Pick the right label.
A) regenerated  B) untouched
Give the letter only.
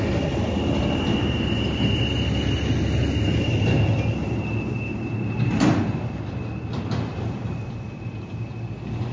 B